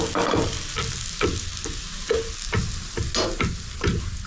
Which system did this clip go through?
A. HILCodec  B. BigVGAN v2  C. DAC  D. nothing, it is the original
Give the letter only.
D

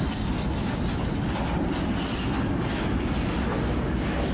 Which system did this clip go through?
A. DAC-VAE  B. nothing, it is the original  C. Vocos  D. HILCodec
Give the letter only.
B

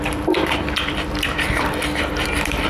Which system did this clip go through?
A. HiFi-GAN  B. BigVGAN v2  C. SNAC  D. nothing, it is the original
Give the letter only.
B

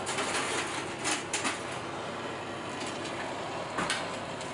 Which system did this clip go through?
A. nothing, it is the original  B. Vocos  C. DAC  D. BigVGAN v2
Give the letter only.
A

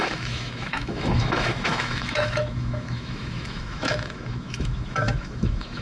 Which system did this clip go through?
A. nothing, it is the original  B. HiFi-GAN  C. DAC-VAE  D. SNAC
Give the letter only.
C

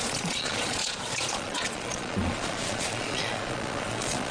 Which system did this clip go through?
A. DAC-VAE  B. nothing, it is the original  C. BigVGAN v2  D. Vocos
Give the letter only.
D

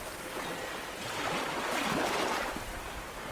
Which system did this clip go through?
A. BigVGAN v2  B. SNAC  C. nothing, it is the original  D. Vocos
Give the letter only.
C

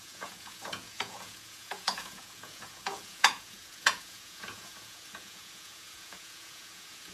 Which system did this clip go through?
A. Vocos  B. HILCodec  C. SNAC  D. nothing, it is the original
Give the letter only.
A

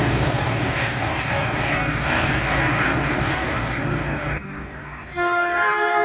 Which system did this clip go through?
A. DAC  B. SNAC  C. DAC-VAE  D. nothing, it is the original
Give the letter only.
A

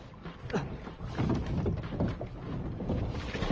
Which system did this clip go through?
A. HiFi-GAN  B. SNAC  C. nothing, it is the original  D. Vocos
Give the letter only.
C